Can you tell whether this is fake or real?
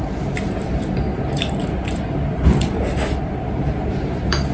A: fake